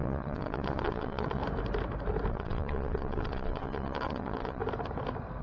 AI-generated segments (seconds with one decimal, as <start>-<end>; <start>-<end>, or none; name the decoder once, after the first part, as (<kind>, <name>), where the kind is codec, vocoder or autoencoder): 0.0-1.4 (vocoder, WaveNeXt); 2.3-4.6

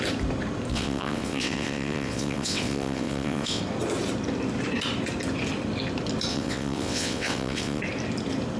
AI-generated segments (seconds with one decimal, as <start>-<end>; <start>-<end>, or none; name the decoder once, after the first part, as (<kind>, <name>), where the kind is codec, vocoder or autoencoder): 0.7-3.6 (vocoder, WaveNeXt); 6.3-7.8

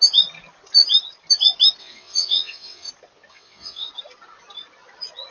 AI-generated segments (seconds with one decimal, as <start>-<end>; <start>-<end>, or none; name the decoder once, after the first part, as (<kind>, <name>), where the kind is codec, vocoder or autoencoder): 1.8-2.9 (vocoder, WaveNeXt); 3.3-3.9

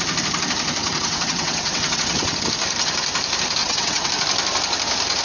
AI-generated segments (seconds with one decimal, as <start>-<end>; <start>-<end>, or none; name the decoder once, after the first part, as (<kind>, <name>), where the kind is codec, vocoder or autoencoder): 0.8-2.5 (vocoder, WaveNeXt); 3.6-4.1

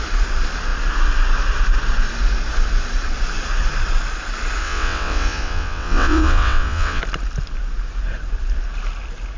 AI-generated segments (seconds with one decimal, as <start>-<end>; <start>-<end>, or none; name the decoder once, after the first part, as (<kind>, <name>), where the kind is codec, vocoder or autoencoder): 4.6-7.0 (vocoder, WaveNeXt)